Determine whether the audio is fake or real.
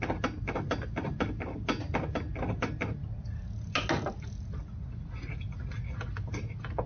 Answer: real